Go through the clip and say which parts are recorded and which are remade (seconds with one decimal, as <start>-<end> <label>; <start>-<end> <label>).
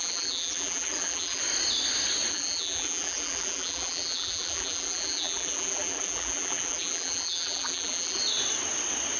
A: 0.0-1.4 remade; 1.4-2.3 recorded; 2.3-8.2 remade; 8.2-9.2 recorded